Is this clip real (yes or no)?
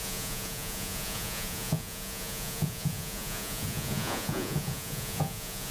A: no